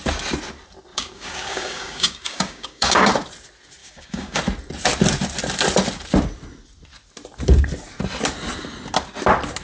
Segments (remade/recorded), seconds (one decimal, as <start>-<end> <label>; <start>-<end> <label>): 0.0-0.9 recorded; 0.9-3.1 remade; 3.1-3.8 recorded; 3.8-4.4 remade; 4.4-9.6 recorded